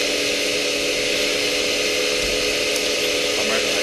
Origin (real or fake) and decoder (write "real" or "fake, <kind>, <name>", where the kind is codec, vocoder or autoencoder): real